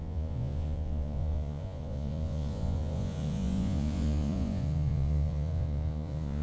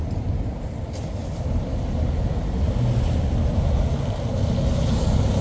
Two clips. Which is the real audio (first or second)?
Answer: second